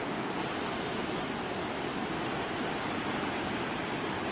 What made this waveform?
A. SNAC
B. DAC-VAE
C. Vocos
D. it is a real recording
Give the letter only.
D